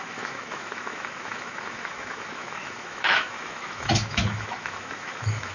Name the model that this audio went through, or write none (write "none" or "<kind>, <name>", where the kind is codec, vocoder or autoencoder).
autoencoder, DAC-VAE